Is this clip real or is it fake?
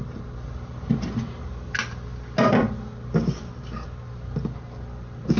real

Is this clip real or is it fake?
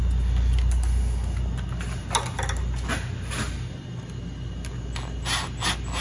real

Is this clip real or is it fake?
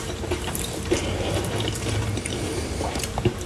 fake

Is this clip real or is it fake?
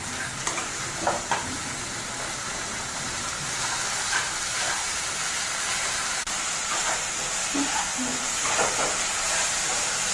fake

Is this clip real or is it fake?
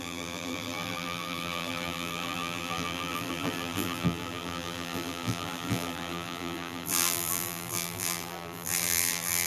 fake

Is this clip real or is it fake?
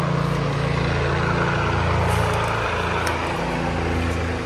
real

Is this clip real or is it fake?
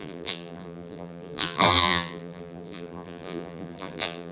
fake